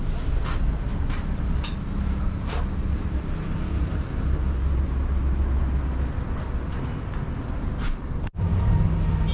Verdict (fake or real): real